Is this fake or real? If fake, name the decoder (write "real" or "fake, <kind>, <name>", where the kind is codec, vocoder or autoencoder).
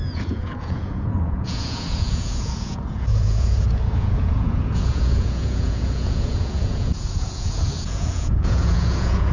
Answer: fake, vocoder, Vocos